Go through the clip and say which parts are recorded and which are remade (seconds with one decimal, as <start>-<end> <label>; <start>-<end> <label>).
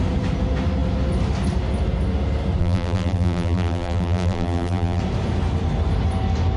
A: 0.0-2.6 recorded; 2.6-5.0 remade; 5.0-6.6 recorded